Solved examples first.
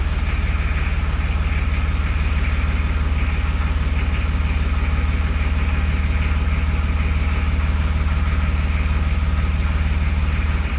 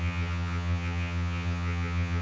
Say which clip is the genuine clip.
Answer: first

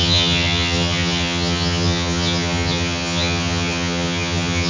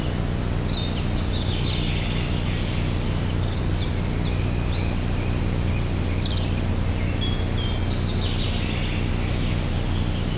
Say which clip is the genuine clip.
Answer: second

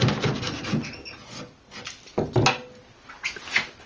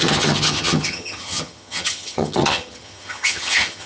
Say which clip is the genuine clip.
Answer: first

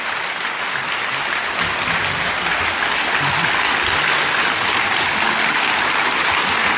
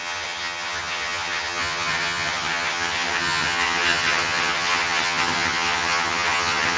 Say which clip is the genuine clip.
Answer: first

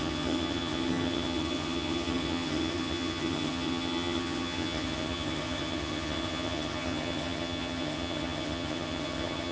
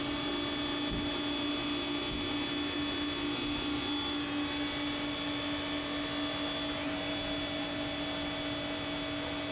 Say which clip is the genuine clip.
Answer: second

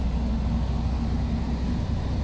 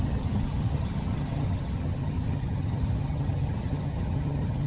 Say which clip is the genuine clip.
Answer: first